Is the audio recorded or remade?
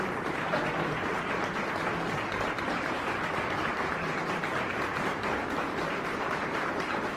remade